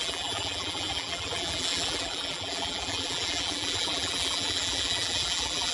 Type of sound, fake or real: fake